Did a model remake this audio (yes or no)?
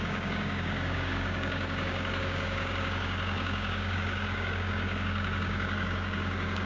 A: yes